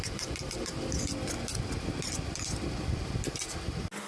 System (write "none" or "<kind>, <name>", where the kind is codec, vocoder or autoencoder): none